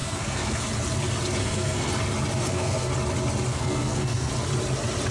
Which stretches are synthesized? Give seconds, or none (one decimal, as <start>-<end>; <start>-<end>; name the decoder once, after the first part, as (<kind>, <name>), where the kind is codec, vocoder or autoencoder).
0.0-0.7 (codec, SNAC); 1.4-1.9; 2.4-2.9; 3.5-4.3